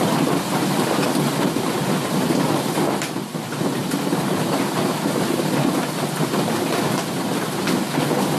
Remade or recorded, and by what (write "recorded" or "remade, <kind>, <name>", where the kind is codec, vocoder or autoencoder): recorded